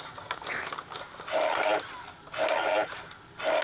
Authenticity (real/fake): real